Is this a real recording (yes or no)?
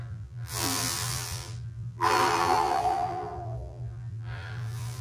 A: no